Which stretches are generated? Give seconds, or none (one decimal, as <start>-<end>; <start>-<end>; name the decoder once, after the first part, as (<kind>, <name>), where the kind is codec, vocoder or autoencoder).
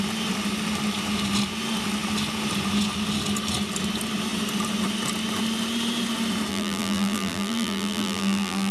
6.5-8.7 (vocoder, BigVGAN v2)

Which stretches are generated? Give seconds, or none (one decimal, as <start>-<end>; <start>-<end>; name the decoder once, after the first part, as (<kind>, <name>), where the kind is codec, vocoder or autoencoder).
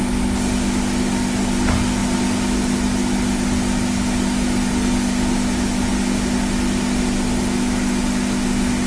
none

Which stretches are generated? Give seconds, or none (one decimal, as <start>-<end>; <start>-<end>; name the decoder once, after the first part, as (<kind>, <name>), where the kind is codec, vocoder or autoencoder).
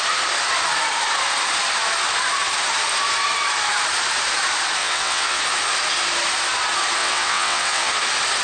4.8-5.4 (vocoder, WaveNeXt); 7.0-7.9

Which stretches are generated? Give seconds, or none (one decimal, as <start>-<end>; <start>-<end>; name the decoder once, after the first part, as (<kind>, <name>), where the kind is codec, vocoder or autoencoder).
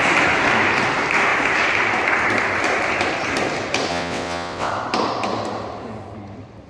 3.9-4.7 (vocoder, WaveNeXt)